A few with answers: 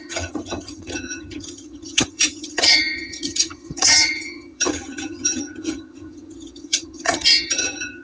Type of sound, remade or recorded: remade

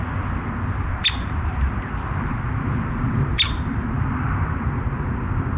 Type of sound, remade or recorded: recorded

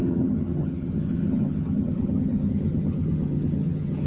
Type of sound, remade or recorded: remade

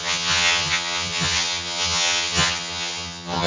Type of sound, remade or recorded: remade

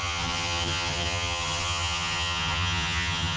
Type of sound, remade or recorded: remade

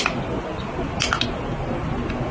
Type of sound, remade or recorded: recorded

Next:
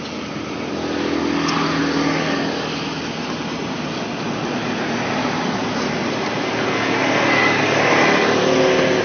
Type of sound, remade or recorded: recorded